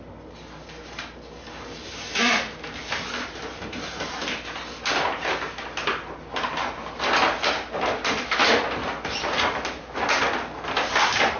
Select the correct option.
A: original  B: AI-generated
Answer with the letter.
A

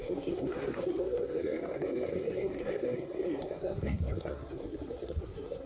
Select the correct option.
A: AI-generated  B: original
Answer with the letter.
A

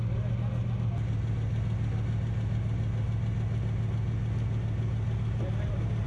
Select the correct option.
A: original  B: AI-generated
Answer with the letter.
A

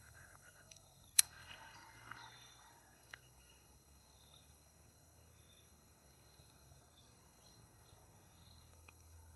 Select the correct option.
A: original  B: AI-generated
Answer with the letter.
B